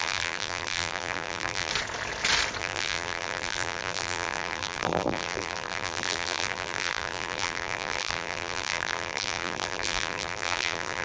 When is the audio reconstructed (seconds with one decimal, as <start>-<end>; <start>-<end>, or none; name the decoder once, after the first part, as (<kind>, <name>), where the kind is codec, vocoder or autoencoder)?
0.0-1.7 (vocoder, BigVGAN v2); 2.6-11.0